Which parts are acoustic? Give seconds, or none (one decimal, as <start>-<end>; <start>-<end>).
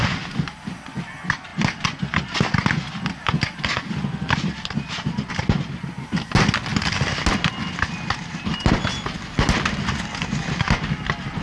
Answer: 0.0-11.4